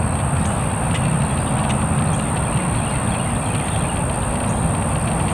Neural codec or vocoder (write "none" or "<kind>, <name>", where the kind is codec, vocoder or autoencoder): none